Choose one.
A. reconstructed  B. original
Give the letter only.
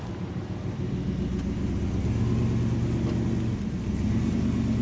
B